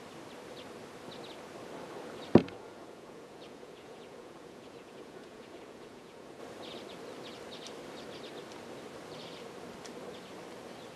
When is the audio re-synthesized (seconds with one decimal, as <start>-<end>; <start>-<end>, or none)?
2.4-6.4